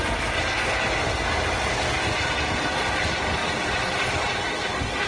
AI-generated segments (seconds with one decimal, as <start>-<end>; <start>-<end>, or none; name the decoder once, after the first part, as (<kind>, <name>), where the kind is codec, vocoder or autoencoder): none